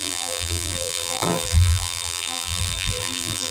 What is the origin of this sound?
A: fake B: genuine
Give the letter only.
A